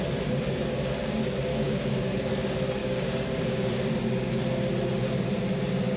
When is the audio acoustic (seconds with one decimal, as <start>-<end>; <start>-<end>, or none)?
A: 0.0-1.5; 2.1-2.8; 3.7-6.0